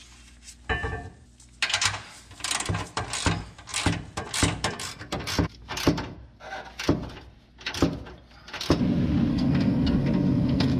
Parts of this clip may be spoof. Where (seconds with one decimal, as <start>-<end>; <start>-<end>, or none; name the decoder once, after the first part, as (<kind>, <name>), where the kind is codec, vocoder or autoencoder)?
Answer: 9.3-10.8 (codec, SNAC)